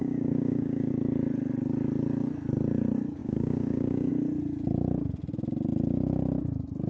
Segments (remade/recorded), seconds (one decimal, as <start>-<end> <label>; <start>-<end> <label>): 0.0-0.9 remade; 0.9-3.2 recorded; 3.2-4.1 remade; 4.1-6.9 recorded

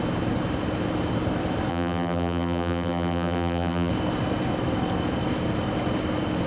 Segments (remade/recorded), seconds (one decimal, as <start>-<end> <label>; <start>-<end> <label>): 0.0-1.7 recorded; 1.7-3.9 remade; 3.9-6.5 recorded

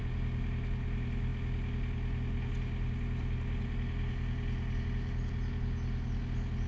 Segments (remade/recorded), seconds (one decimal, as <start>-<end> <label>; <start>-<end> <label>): 0.0-6.7 recorded

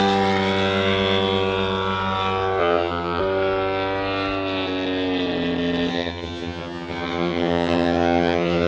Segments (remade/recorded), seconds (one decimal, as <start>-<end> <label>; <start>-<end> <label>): 0.0-2.6 recorded; 2.6-3.2 remade; 3.2-5.9 recorded; 5.9-8.7 remade

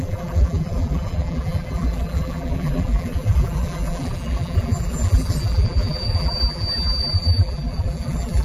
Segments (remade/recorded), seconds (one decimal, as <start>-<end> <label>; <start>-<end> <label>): 0.0-8.4 remade

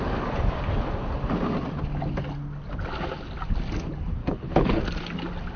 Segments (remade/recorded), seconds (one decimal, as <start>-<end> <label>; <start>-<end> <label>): 0.0-4.2 recorded; 4.2-4.8 remade; 4.8-5.6 recorded

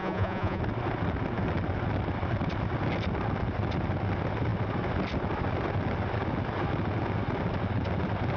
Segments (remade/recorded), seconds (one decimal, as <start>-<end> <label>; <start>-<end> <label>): 0.0-0.6 remade; 0.6-8.4 recorded

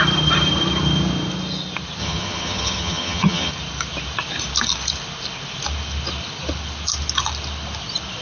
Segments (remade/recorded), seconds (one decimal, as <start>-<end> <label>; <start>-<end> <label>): 0.0-2.0 recorded; 2.0-3.5 remade; 3.5-8.2 recorded